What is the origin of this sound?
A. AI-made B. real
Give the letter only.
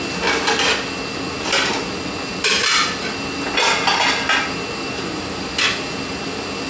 B